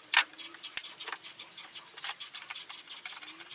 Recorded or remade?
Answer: recorded